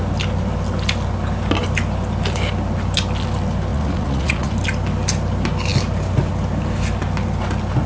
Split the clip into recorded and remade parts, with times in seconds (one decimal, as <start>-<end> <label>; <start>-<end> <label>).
0.0-3.7 recorded; 3.7-4.5 remade; 4.5-7.9 recorded